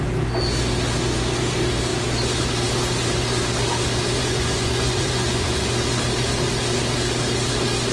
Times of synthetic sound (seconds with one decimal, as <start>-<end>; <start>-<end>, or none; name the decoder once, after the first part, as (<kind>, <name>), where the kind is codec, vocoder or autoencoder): 4.2-5.7 (vocoder, Vocos)